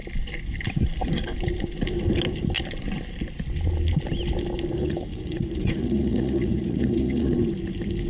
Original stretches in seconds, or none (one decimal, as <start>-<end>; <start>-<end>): 0.0-4.8; 7.3-8.1